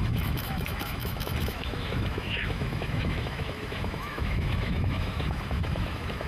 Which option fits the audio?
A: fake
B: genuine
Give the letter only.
A